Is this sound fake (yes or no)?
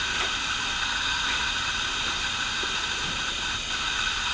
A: no